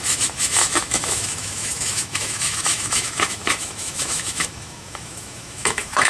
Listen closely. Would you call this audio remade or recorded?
remade